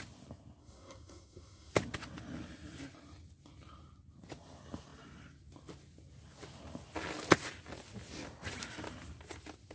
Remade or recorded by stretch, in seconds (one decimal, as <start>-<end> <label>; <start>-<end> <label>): 0.0-0.6 recorded; 0.6-1.7 remade; 1.7-9.7 recorded